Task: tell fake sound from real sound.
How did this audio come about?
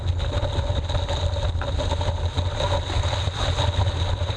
real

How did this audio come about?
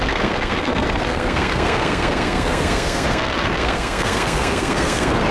fake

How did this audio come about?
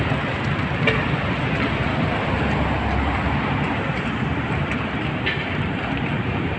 real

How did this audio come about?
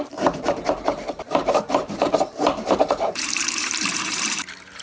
fake